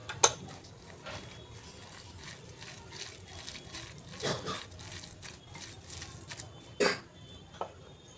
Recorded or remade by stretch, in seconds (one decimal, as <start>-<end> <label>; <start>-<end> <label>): 0.0-8.2 recorded